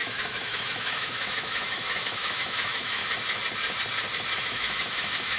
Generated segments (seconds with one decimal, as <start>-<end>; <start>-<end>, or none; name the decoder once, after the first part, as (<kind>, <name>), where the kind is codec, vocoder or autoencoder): 0.0-3.0 (autoencoder, DAC-VAE); 4.4-5.4